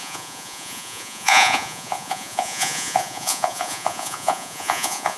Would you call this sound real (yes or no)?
no